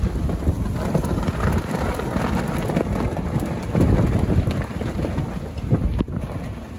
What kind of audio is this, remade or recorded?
recorded